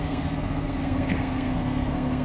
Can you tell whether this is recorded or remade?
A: remade